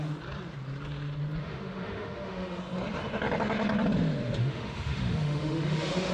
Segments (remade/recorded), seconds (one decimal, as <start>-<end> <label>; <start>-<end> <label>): 0.0-1.4 recorded; 1.4-2.6 remade; 2.6-4.4 recorded; 4.4-6.1 remade